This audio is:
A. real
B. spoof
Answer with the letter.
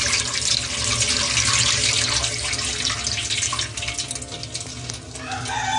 A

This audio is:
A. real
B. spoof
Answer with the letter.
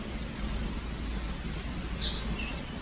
A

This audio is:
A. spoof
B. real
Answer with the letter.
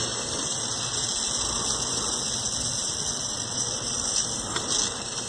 B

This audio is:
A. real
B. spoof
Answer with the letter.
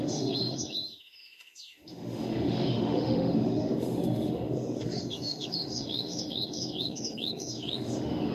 B